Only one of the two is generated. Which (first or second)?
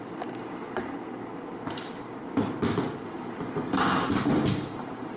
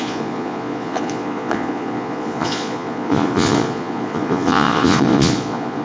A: second